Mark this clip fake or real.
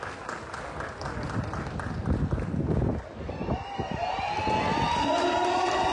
real